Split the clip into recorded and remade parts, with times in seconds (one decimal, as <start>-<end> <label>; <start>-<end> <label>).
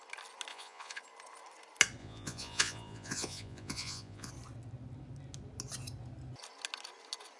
0.0-0.5 recorded; 0.5-1.0 remade; 1.0-2.0 recorded; 2.0-4.3 remade; 4.3-7.4 recorded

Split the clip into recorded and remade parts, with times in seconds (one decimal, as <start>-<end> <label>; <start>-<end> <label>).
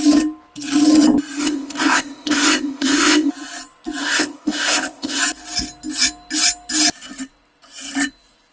0.0-1.4 recorded; 1.4-3.3 remade; 3.3-4.0 recorded; 4.0-5.2 remade; 5.2-8.5 recorded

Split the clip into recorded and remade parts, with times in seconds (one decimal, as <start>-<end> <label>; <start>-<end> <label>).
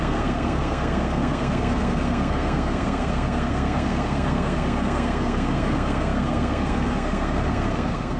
0.0-8.2 remade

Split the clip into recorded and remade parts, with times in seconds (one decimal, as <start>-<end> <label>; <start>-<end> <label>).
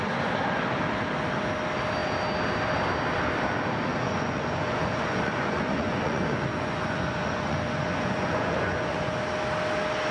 0.0-3.9 recorded; 3.9-9.1 remade; 9.1-10.1 recorded